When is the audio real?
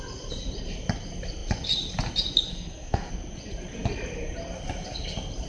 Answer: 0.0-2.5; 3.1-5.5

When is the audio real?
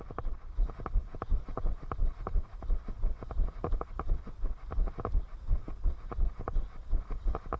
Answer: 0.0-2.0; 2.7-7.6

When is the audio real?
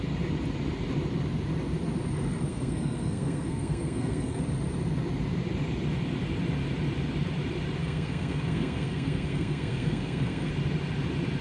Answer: 0.0-2.5; 4.4-7.8; 10.5-11.4